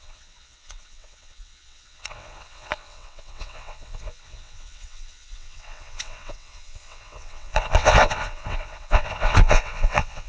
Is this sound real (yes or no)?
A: no